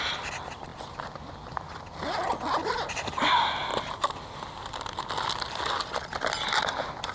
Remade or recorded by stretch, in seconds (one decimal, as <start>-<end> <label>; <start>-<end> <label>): 0.0-7.1 recorded